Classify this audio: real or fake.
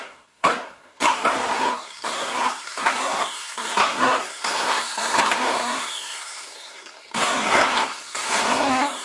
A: fake